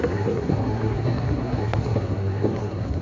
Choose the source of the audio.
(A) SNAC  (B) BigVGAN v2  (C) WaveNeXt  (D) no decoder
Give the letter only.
A